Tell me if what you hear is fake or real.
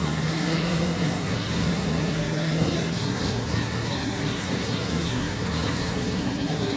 fake